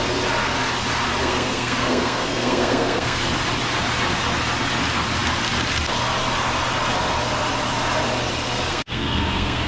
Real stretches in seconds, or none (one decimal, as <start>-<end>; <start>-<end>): 0.0-1.2; 3.2-8.7